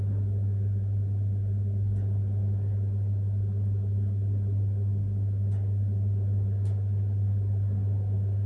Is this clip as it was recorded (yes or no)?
yes